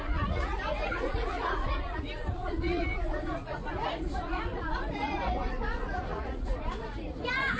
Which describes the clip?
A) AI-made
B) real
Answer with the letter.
A